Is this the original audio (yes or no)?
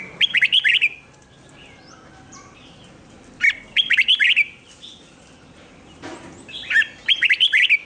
yes